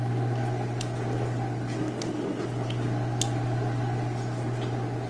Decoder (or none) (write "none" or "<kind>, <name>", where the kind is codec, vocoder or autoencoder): none